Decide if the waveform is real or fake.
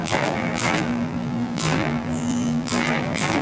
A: fake